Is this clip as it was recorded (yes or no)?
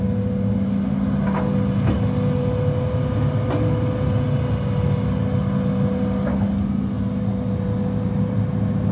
yes